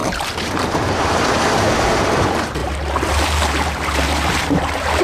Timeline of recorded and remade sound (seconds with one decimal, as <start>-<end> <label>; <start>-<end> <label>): 0.0-5.0 remade